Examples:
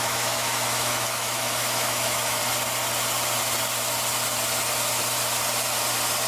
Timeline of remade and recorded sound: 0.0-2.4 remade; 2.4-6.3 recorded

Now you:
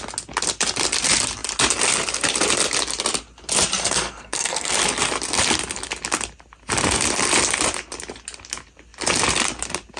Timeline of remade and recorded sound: 0.0-3.8 recorded; 3.8-4.7 remade; 4.7-10.0 recorded